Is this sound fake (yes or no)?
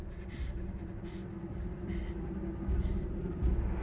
no